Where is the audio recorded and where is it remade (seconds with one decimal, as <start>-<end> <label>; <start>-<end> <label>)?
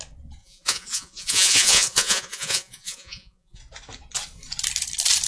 0.0-0.4 recorded; 0.4-3.6 remade; 3.6-5.3 recorded